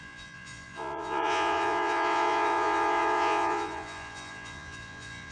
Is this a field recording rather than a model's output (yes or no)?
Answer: no